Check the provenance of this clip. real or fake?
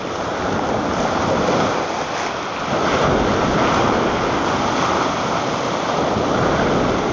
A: real